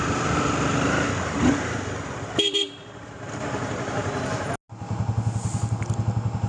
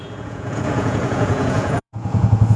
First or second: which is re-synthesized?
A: second